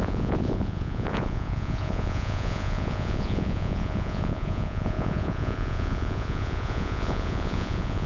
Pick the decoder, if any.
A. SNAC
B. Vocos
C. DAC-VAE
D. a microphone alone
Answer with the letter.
B